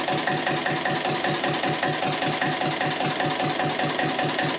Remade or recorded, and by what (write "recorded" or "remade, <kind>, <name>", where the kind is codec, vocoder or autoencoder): recorded